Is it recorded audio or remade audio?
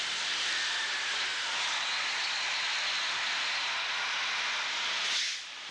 recorded